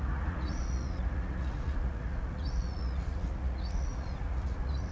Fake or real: fake